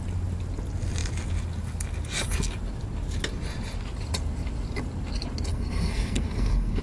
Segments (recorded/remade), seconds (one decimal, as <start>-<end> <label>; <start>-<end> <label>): 0.0-5.5 recorded; 5.5-6.8 remade